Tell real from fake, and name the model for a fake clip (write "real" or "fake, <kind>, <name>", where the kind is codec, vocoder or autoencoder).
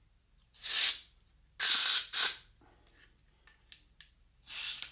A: real